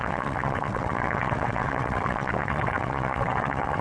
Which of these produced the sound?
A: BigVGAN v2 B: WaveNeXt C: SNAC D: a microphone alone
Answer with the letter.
B